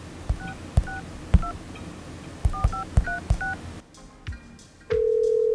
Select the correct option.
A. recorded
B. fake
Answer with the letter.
A